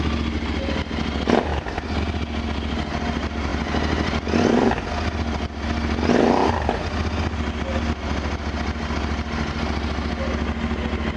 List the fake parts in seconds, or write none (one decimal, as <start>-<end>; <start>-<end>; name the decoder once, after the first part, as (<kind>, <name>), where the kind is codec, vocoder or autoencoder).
none